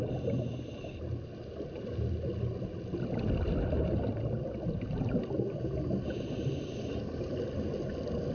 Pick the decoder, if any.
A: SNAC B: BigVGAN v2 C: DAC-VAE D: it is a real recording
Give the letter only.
D